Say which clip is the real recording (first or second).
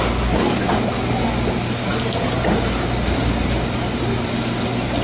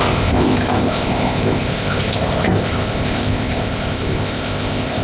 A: first